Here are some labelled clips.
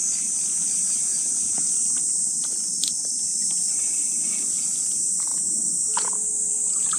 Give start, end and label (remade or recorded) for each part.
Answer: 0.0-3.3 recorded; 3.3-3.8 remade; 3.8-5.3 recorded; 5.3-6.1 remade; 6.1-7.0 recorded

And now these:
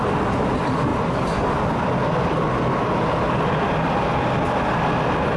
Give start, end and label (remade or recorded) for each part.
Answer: 0.0-5.4 recorded

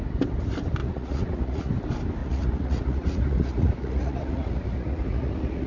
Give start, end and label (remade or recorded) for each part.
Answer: 0.0-0.8 recorded; 0.8-1.7 remade; 1.7-2.2 recorded; 2.2-5.7 remade

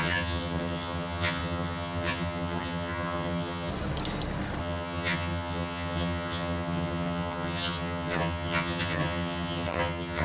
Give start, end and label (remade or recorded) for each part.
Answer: 0.0-3.7 remade; 3.7-4.6 recorded; 4.6-10.2 remade

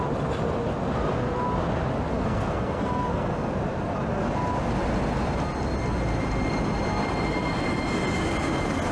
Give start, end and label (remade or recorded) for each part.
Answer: 0.0-2.1 recorded; 2.1-3.5 remade; 3.5-8.9 recorded